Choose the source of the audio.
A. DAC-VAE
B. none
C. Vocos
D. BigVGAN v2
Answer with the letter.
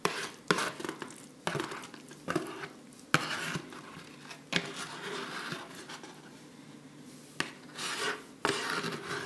B